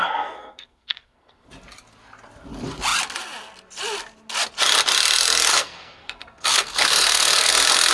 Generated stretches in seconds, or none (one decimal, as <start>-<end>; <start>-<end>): 0.0-1.5; 5.5-7.5